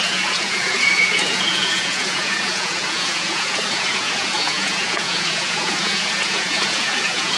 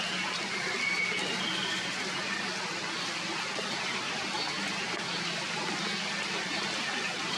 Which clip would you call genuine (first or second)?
second